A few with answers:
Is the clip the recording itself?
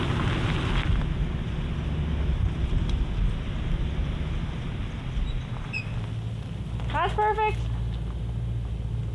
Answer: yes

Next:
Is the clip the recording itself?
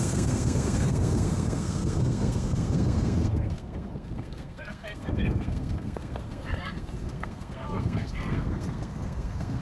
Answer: no